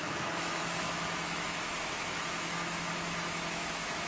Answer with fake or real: fake